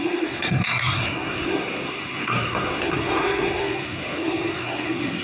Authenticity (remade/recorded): remade